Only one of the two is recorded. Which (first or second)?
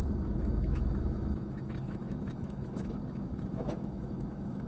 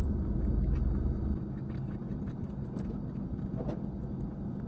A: second